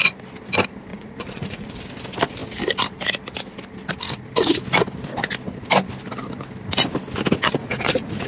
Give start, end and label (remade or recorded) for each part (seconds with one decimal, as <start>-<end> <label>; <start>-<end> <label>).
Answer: 0.0-0.9 recorded; 0.9-1.7 remade; 1.7-7.6 recorded; 7.6-8.3 remade